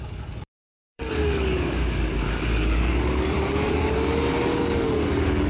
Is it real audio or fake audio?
fake